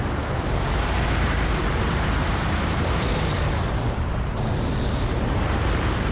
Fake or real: fake